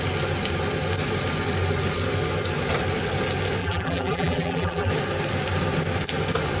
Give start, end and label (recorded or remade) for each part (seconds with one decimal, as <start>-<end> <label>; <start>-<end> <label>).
0.0-3.6 recorded; 3.6-4.9 remade; 4.9-6.6 recorded